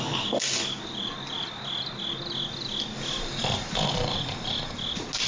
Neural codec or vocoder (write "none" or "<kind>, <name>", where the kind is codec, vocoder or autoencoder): none